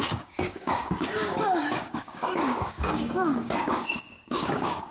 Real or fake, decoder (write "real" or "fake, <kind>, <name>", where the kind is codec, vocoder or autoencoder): fake, codec, DAC